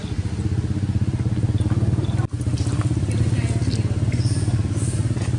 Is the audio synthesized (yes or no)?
no